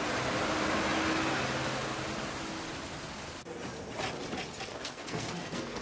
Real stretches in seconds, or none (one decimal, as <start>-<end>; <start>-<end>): 0.0-4.7